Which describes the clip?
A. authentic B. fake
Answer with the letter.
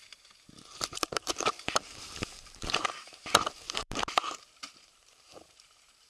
B